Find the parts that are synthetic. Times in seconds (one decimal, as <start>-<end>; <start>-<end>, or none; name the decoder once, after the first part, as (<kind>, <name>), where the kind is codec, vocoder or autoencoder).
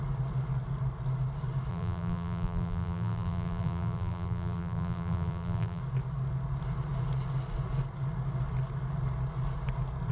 1.7-5.8 (vocoder, BigVGAN v2)